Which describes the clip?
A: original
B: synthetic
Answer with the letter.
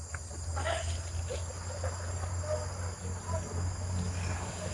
A